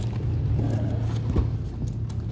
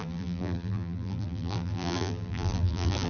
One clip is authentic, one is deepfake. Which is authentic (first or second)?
first